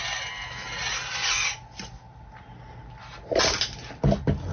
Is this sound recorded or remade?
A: recorded